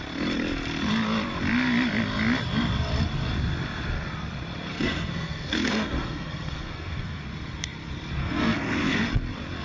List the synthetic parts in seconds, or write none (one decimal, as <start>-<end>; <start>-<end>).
4.7-7.2; 8.2-9.0